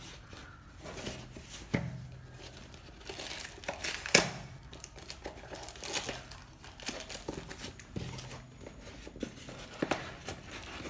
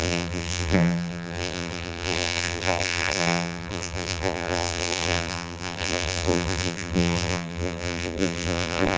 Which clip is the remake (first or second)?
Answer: second